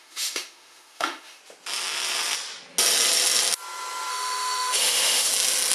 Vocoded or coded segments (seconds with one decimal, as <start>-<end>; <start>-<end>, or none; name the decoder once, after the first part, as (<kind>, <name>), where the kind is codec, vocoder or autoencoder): 0.0-1.4 (autoencoder, DAC-VAE); 4.1-5.3